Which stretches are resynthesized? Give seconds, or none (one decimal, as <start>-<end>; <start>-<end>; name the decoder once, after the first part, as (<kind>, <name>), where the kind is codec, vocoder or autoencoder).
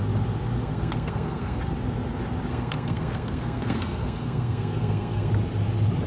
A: 0.6-1.6 (codec, SNAC); 2.5-5.3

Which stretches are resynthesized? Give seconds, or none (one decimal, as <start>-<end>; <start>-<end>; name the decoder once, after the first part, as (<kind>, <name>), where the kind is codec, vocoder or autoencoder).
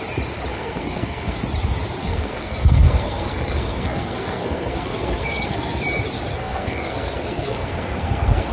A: 0.5-1.4 (codec, SNAC); 2.0-5.8; 6.3-8.5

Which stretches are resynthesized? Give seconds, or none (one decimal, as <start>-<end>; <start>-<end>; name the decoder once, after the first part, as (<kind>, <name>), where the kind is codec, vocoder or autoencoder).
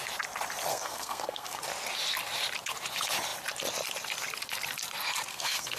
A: 0.7-1.6 (codec, SNAC); 5.3-5.8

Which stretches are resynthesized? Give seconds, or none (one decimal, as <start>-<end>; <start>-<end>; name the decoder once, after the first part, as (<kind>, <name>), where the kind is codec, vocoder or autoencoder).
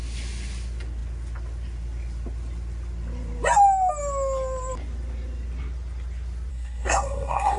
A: 6.5-7.6 (codec, SNAC)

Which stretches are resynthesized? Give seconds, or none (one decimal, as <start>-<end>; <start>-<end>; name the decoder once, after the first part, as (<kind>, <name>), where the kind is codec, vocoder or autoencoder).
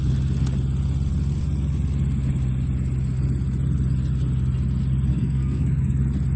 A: 5.1-6.0 (codec, SNAC)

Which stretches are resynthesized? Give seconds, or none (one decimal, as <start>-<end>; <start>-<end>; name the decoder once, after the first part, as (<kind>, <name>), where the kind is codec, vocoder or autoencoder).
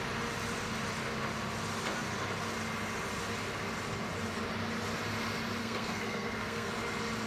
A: 5.6-6.7 (codec, SNAC)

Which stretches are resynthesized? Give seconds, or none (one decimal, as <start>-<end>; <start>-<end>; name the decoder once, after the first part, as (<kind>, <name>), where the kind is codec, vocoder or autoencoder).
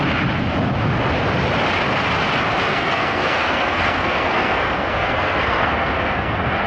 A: 2.7-6.7 (codec, SNAC)